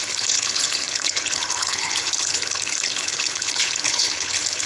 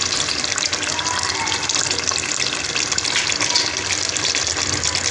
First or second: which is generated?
first